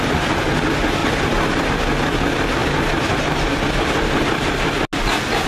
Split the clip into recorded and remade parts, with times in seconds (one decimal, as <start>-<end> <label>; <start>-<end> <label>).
0.0-1.0 recorded; 1.0-1.7 remade; 1.7-2.6 recorded; 2.6-4.7 remade; 4.7-5.5 recorded